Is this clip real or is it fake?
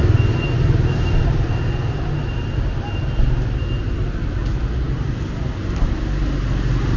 real